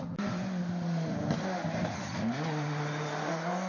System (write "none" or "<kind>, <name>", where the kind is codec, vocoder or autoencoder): none